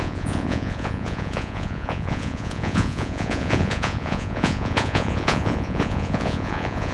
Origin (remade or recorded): remade